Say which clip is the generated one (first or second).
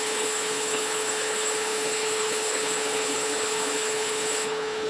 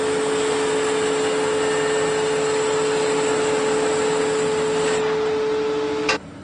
first